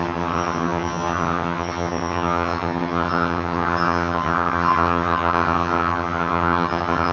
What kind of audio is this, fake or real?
fake